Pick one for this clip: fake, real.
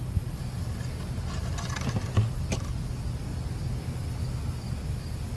real